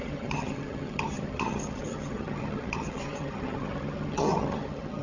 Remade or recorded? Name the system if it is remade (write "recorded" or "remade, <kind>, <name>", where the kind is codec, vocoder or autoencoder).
remade, vocoder, HiFi-GAN